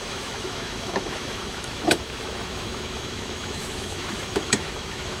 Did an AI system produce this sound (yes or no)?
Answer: yes